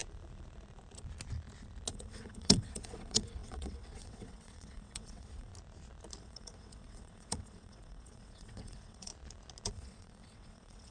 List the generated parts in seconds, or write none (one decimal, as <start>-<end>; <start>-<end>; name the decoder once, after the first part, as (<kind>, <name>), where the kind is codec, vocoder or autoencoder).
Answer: 1.9-5.5 (vocoder, WaveNeXt); 6.2-9.1; 9.7-10.9